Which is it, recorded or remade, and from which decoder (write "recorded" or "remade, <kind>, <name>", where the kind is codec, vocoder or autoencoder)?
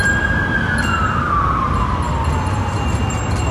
recorded